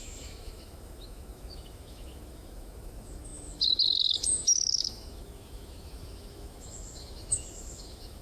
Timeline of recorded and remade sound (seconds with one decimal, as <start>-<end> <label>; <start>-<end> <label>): 0.0-8.2 remade